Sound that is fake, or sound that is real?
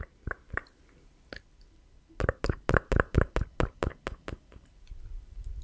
real